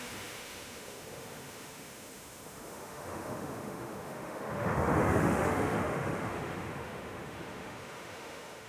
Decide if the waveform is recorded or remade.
remade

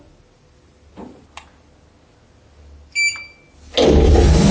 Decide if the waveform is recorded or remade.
recorded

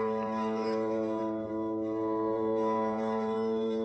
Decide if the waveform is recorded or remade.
remade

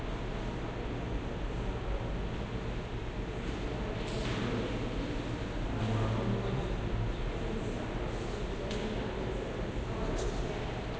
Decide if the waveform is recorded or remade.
recorded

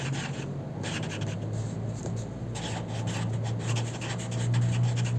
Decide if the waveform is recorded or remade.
recorded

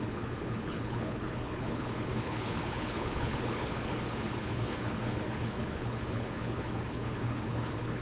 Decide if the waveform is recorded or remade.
remade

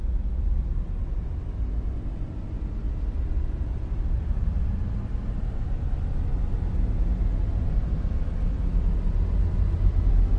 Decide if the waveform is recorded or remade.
recorded